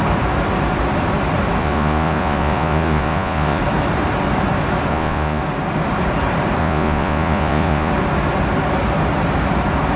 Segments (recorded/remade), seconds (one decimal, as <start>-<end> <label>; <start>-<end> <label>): 0.0-1.6 recorded; 1.6-3.6 remade; 3.6-4.9 recorded; 4.9-5.4 remade; 5.4-6.6 recorded; 6.6-7.9 remade; 7.9-10.0 recorded

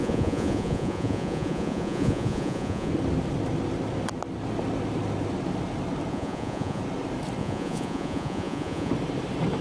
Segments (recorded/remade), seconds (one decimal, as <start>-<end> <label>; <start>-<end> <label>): 0.0-2.9 remade; 2.9-6.1 recorded; 6.1-6.8 remade; 6.8-7.4 recorded; 7.4-8.9 remade; 8.9-9.6 recorded

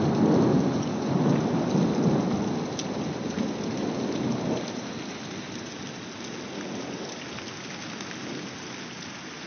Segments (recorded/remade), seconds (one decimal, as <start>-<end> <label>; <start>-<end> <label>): 0.0-0.5 recorded; 0.5-1.1 remade; 1.1-9.5 recorded

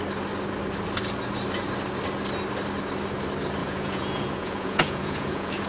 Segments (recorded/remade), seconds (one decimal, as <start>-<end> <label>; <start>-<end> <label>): 0.0-3.6 recorded; 3.6-5.7 remade

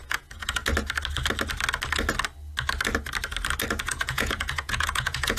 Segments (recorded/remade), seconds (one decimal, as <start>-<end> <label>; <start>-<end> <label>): 0.0-0.6 remade; 0.6-3.8 recorded; 3.8-5.4 remade

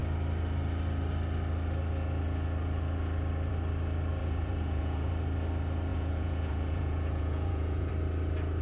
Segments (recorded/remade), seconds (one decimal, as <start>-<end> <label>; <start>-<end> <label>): 0.0-4.2 recorded; 4.2-5.1 remade; 5.1-5.9 recorded; 5.9-7.9 remade; 7.9-8.6 recorded